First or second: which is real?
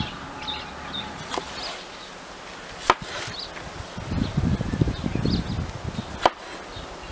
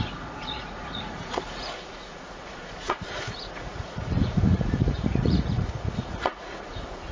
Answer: first